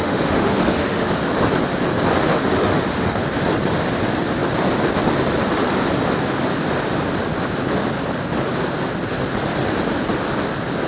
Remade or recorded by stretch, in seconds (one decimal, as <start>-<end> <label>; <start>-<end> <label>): 0.0-1.1 remade; 1.1-2.3 recorded; 2.3-3.2 remade; 3.2-10.9 recorded